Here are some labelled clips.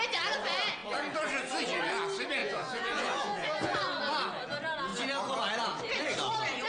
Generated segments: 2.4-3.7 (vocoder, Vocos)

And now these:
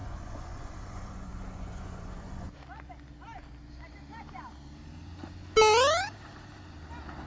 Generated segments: 0.0-2.6 (vocoder, Vocos)